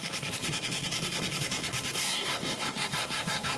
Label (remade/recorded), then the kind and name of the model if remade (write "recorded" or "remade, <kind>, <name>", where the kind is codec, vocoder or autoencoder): remade, codec, SNAC